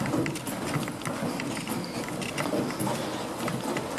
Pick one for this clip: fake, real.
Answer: real